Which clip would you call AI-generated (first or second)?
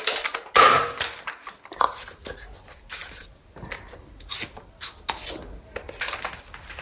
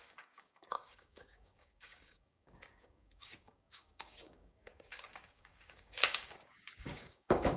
second